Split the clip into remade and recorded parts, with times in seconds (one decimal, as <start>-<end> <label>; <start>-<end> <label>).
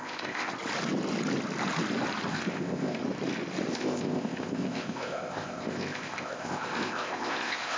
0.0-0.5 remade; 0.5-2.3 recorded; 2.3-3.0 remade; 3.0-3.7 recorded; 3.7-7.8 remade